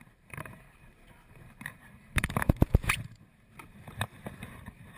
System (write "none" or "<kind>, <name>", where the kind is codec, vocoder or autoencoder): vocoder, BigVGAN v2